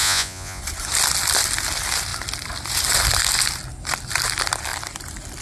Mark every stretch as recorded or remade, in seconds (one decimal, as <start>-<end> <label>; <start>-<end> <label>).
0.0-0.6 remade; 0.6-5.4 recorded